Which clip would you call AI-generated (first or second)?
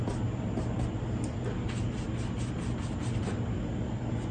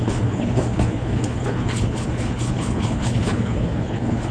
second